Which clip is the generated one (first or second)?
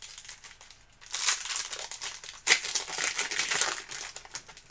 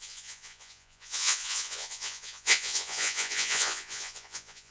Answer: second